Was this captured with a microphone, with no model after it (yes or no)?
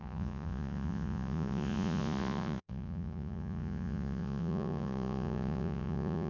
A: no